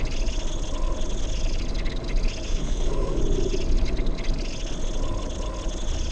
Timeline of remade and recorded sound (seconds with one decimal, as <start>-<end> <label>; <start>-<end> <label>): 0.0-2.5 recorded; 2.5-3.2 remade; 3.2-6.1 recorded